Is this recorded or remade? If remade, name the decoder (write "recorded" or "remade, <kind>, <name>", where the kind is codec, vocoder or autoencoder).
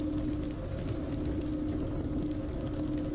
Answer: recorded